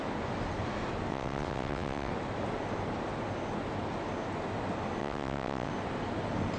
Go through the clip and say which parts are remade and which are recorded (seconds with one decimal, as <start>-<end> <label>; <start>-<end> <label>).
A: 0.0-1.1 recorded; 1.1-2.1 remade; 2.1-5.0 recorded; 5.0-5.7 remade; 5.7-6.6 recorded